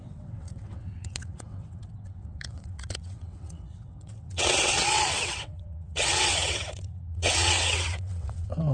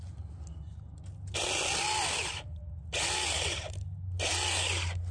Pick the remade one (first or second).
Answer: first